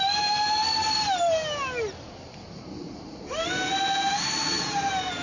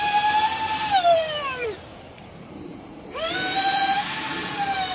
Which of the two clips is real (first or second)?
first